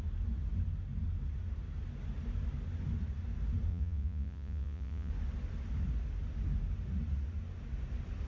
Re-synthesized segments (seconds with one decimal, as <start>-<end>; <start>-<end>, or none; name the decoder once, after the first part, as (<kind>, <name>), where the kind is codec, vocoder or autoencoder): 3.7-5.1 (vocoder, Vocos)